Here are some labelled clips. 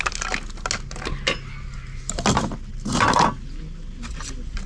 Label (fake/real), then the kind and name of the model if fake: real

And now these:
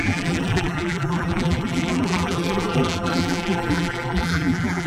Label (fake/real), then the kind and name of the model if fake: fake, vocoder, BigVGAN v2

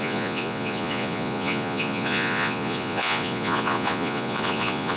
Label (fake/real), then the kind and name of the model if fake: fake, vocoder, Vocos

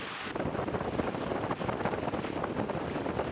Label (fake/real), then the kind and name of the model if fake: real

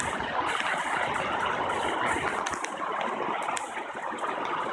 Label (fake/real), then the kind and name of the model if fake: real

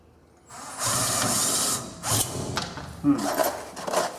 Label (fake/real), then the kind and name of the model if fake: real